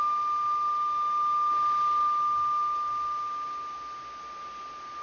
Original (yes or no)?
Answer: yes